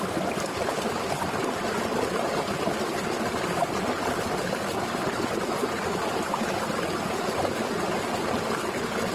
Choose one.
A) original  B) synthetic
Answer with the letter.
A